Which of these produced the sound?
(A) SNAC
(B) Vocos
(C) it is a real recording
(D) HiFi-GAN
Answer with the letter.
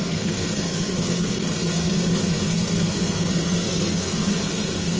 A